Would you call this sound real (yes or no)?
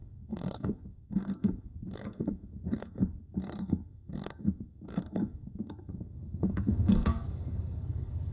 no